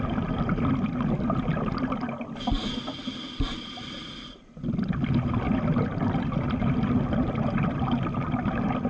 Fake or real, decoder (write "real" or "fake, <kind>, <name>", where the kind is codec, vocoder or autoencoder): real